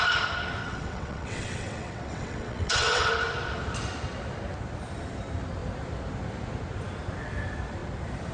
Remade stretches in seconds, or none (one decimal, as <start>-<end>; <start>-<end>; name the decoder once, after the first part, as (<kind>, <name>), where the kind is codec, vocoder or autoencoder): 0.6-3.1 (vocoder, WaveNeXt)